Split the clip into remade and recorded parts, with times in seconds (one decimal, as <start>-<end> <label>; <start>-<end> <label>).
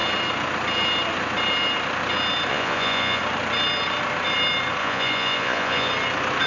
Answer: 0.0-2.5 recorded; 2.5-3.2 remade; 3.2-4.8 recorded; 4.8-5.9 remade; 5.9-6.5 recorded